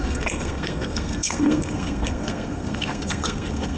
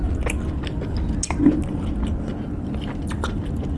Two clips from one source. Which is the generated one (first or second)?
first